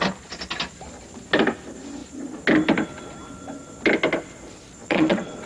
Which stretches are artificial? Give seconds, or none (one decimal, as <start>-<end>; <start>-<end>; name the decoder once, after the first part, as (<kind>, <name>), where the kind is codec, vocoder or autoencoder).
4.8-5.5 (vocoder, WaveNeXt)